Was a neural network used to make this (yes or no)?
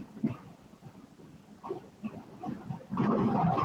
no